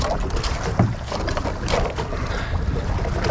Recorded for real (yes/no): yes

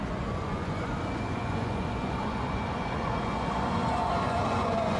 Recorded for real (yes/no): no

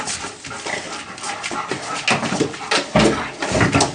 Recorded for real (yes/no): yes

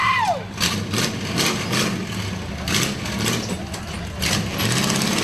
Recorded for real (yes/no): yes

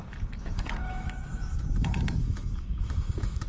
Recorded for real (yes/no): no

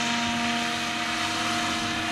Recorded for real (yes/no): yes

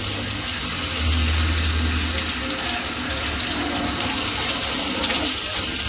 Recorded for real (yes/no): yes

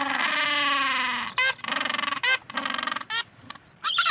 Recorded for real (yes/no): yes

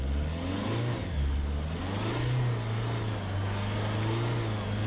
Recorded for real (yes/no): yes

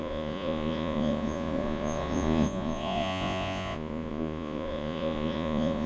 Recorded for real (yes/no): no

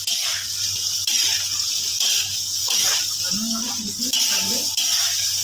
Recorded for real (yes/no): yes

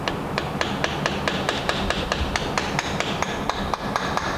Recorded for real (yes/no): yes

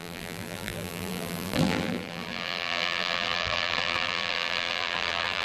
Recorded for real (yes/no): no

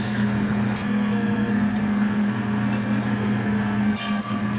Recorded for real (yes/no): no